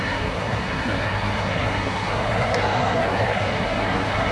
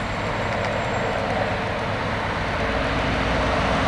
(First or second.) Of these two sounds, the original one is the second